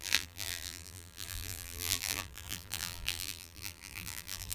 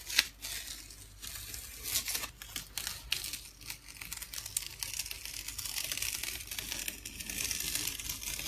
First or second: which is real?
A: second